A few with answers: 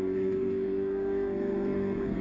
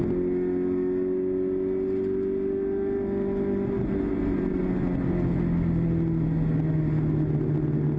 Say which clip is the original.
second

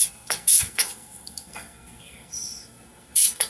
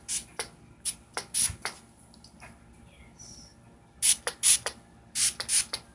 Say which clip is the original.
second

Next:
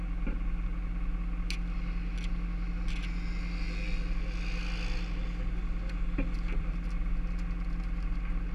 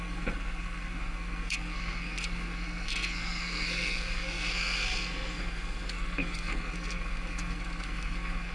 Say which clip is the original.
first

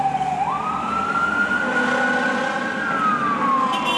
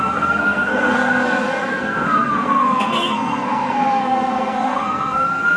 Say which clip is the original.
first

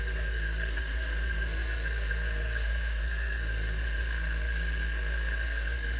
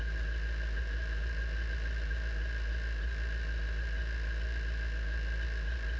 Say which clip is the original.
second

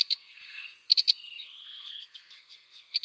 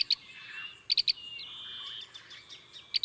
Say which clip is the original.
second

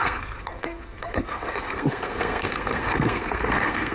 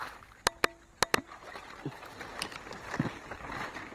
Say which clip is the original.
second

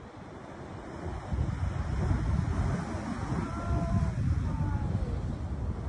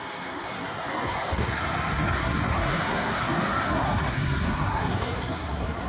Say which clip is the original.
first